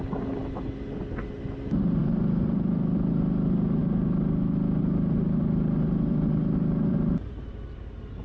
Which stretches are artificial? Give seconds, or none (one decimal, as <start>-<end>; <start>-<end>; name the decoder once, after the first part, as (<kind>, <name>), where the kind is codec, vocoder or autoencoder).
2.0-3.1 (vocoder, BigVGAN v2)